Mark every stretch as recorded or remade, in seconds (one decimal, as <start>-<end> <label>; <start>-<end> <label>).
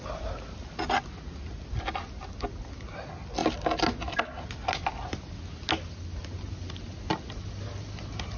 0.0-8.4 recorded